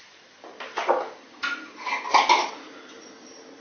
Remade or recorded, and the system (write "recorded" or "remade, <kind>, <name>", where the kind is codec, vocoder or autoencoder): recorded